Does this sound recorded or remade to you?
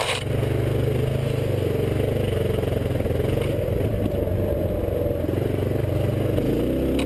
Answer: recorded